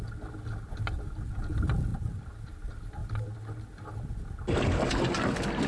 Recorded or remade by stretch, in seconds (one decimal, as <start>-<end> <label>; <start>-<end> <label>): 0.0-5.7 recorded